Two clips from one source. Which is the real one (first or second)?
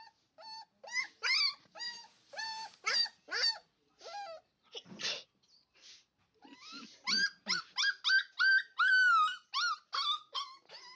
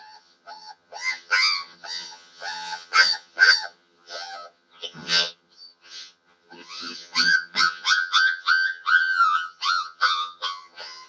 first